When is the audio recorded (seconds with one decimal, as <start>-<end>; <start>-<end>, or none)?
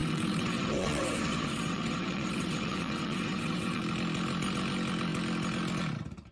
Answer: 3.8-6.3